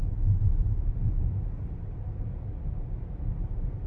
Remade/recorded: recorded